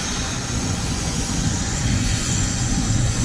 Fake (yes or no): yes